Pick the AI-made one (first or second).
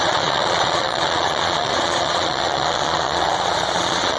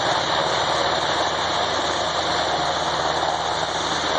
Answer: first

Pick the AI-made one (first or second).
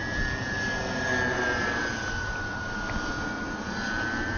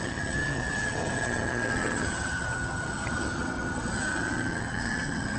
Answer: second